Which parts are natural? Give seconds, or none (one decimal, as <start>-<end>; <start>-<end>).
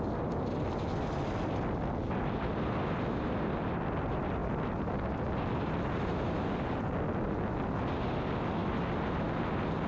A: 0.0-9.9